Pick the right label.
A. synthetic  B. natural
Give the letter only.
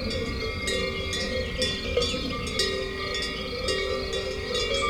B